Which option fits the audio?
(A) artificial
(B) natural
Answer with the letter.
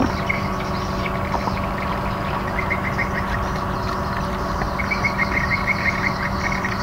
B